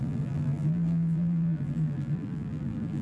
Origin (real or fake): fake